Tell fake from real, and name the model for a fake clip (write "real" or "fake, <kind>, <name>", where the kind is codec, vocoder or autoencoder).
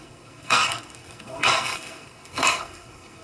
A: fake, codec, SNAC